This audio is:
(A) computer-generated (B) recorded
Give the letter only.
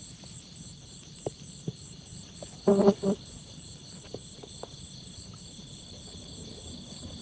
B